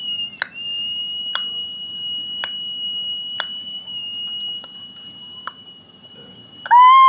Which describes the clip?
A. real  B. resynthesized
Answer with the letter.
A